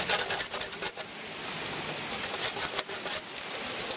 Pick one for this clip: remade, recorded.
recorded